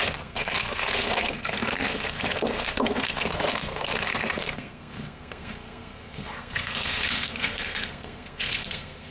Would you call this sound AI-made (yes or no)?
yes